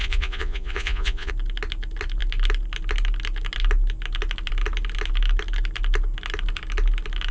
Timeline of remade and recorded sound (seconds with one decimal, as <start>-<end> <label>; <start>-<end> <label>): 0.0-1.3 remade; 1.3-7.3 recorded